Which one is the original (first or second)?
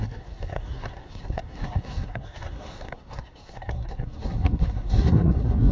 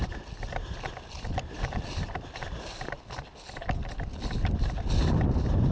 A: second